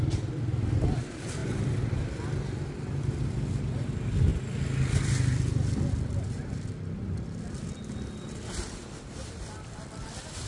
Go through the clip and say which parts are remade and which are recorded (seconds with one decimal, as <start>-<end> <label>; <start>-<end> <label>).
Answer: 0.0-10.5 recorded